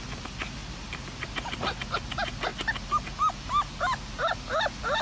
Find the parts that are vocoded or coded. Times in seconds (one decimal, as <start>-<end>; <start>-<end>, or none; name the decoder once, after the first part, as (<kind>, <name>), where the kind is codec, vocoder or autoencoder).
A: none